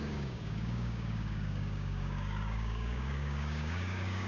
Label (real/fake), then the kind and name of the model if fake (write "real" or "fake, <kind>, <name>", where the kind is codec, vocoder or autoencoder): fake, codec, DAC